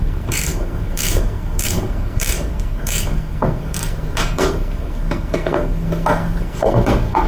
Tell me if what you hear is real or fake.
fake